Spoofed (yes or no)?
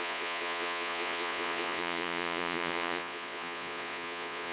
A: yes